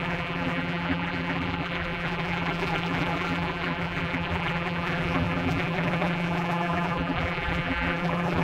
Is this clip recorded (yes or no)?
no